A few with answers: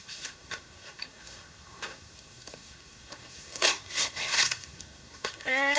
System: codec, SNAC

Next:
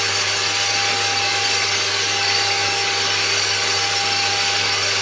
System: codec, DAC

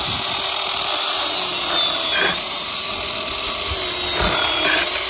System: none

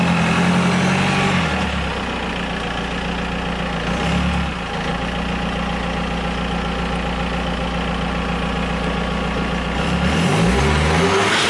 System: none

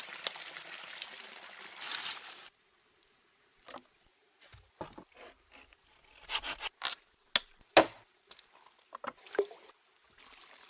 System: none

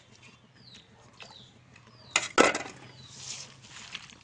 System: none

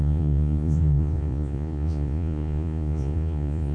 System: vocoder, Vocos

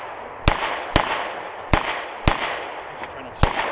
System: none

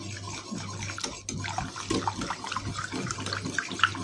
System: none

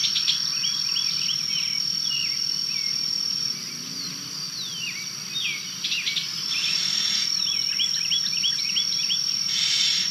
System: none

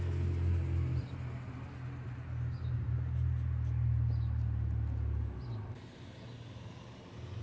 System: none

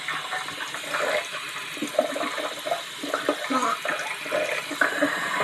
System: none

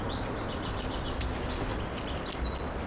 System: none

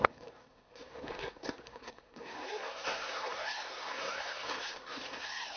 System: codec, SNAC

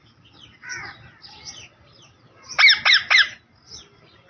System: none